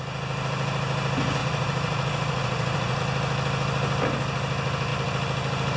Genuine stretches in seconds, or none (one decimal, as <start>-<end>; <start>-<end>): 0.0-1.4; 3.0-5.8